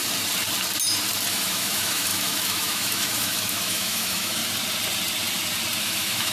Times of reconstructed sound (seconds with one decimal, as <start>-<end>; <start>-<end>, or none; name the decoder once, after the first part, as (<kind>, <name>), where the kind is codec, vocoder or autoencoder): 1.3-4.4 (autoencoder, DAC-VAE); 5.8-6.3

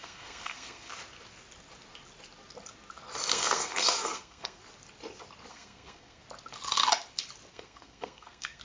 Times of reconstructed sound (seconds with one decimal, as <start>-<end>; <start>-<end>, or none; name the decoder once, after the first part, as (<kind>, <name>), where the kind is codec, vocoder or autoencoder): 0.0-0.9 (codec, SNAC); 3.3-4.6; 5.5-6.2; 7.5-8.6

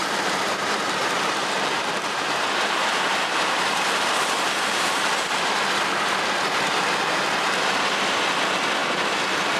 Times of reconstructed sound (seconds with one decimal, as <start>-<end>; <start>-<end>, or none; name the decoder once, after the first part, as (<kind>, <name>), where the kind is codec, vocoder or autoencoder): 0.0-5.3 (vocoder, BigVGAN v2)

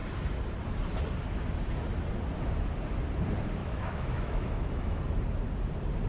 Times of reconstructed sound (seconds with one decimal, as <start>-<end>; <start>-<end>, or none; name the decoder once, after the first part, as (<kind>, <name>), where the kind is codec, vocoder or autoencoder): 3.6-5.0 (autoencoder, DAC-VAE)

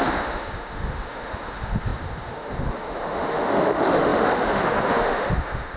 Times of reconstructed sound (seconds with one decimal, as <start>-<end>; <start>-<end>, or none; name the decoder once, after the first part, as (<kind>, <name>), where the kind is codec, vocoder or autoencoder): 0.0-5.8 (autoencoder, DAC-VAE)